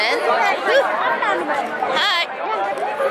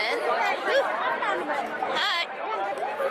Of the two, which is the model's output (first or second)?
second